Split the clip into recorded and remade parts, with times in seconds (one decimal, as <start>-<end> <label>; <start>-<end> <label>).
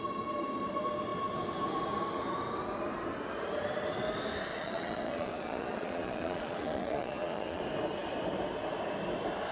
0.0-4.5 recorded; 4.5-7.6 remade; 7.6-9.5 recorded